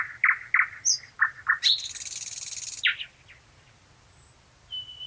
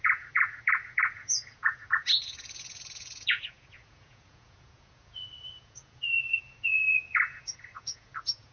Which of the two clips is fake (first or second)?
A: second